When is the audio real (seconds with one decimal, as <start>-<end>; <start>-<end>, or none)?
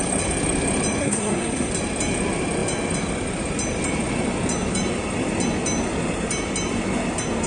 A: 0.0-1.0; 1.7-7.5